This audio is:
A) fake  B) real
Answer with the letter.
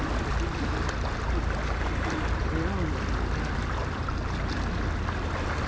B